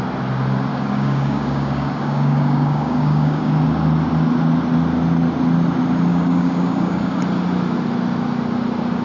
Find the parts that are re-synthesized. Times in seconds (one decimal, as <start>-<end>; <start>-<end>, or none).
0.7-3.5; 6.1-7.2